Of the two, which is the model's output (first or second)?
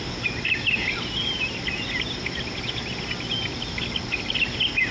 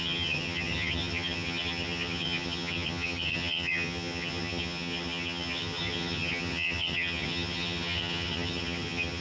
second